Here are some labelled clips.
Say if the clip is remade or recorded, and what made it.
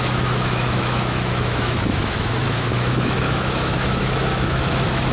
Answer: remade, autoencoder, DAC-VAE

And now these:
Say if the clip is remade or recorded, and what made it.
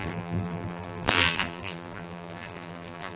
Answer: remade, vocoder, BigVGAN v2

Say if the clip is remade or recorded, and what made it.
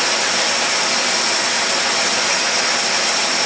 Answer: recorded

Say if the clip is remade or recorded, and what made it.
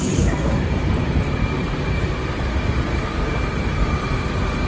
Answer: remade, vocoder, BigVGAN v2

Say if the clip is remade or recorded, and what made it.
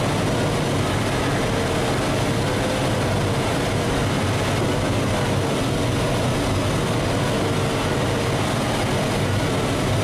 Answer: recorded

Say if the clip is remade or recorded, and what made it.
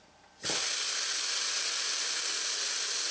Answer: recorded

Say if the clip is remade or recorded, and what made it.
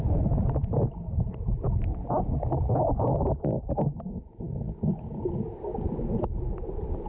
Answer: recorded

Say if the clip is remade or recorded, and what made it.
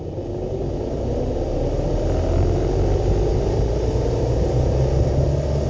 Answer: recorded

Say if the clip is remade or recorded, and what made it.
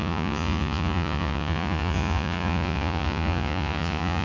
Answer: remade, vocoder, Vocos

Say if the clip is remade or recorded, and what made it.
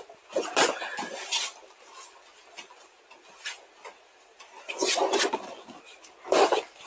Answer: recorded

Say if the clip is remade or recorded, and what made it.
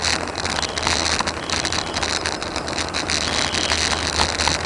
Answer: recorded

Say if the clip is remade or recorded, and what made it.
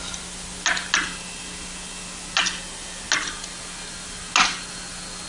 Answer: recorded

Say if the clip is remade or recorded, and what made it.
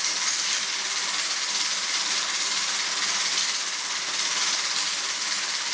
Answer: recorded